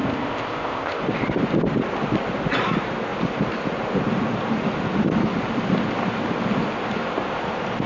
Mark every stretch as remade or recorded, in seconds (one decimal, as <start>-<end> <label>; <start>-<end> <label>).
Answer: 0.0-1.0 remade; 1.0-7.9 recorded